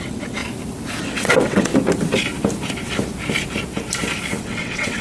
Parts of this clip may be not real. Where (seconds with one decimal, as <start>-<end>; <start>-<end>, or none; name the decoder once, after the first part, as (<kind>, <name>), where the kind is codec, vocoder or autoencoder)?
0.0-0.4 (vocoder, WaveNeXt); 1.0-1.7; 4.4-5.0